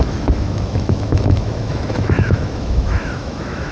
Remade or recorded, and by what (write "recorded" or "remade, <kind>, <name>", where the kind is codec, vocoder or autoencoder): remade, autoencoder, DAC-VAE